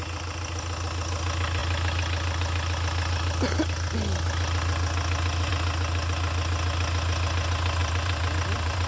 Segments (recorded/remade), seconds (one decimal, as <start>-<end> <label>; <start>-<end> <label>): 0.0-7.8 recorded; 7.8-8.9 remade